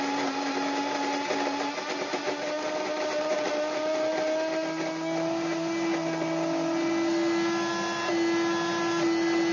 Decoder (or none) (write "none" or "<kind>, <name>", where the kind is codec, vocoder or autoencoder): none